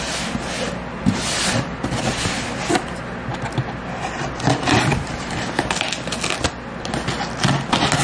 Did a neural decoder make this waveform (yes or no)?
no